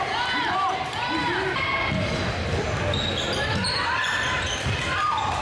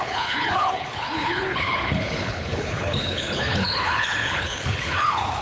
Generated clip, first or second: second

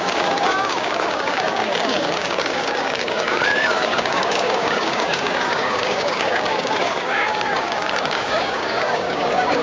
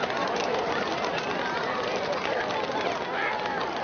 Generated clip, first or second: first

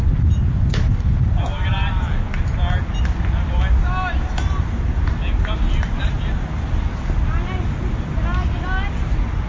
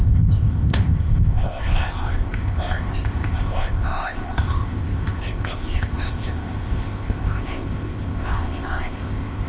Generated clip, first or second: second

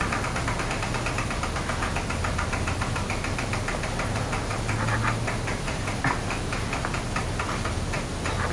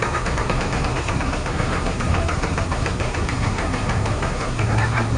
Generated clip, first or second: second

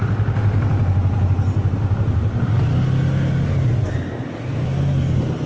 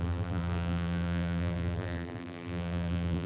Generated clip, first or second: second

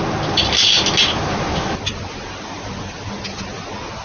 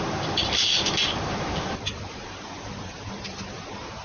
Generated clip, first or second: second